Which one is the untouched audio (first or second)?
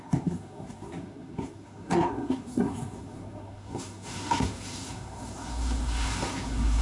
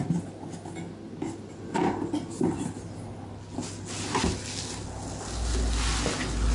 second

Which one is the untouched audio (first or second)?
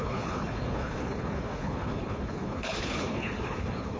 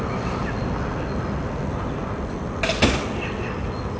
second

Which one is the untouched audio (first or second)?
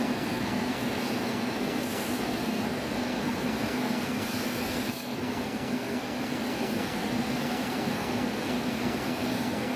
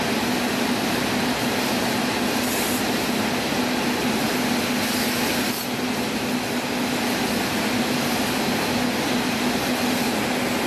second